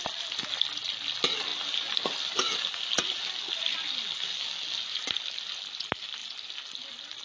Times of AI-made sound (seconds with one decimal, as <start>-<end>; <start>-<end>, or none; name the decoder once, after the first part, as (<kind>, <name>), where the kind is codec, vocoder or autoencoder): none